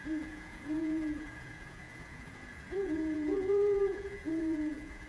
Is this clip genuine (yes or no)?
no